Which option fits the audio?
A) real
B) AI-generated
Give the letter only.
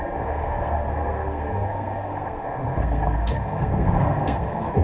B